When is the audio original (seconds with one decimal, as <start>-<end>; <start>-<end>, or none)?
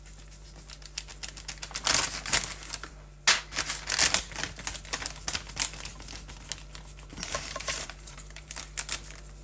0.0-7.1; 8.6-9.4